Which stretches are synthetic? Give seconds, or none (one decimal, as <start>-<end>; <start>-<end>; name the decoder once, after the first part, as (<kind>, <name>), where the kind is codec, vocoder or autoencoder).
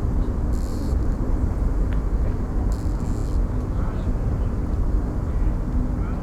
0.7-1.9 (vocoder, BigVGAN v2)